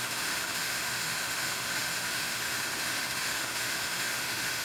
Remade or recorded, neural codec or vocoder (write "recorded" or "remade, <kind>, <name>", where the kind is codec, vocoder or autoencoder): remade, autoencoder, DAC-VAE